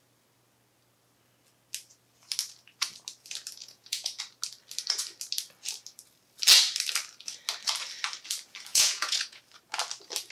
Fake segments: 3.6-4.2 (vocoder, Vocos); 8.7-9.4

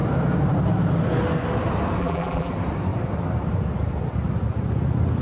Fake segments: 2.0-2.5 (vocoder, BigVGAN v2)

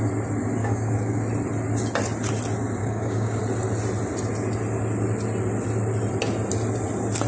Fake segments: 0.6-1.2 (codec, DAC); 2.8-3.4

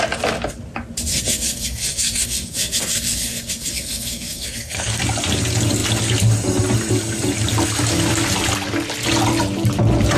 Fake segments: 1.1-5.0 (codec, SNAC)

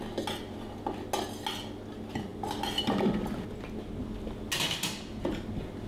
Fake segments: none